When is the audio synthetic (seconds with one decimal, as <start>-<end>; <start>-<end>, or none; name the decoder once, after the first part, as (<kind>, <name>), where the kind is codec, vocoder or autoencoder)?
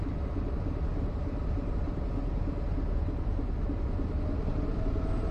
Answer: 4.5-5.3 (vocoder, BigVGAN v2)